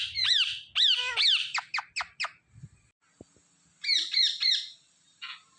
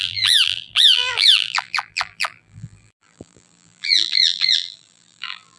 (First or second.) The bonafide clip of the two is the first